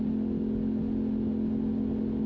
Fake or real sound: real